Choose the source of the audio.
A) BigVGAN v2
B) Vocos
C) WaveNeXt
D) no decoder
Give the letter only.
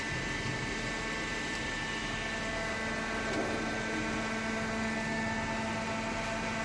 D